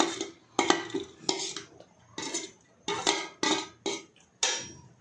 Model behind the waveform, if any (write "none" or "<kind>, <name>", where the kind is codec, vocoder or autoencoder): none